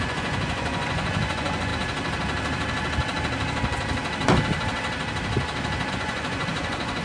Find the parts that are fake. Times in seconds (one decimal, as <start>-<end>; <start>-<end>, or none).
0.0-1.7; 5.9-7.0